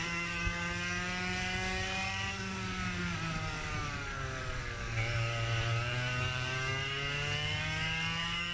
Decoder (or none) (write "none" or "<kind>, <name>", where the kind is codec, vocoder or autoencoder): codec, DAC